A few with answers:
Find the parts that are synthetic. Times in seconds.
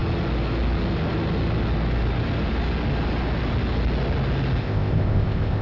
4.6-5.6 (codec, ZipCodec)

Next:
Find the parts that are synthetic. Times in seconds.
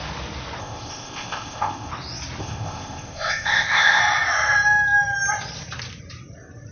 0.6-1.9 (codec, ZipCodec); 2.4-4.0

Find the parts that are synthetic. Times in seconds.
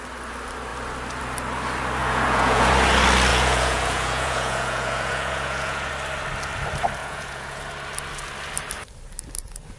2.0-2.7 (vocoder, Vocos); 3.3-5.9; 7.0-7.6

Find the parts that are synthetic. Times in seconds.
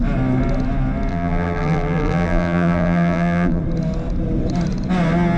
1.1-3.6 (vocoder, BigVGAN v2)